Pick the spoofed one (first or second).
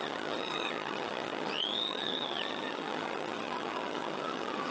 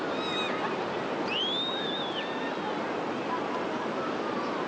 first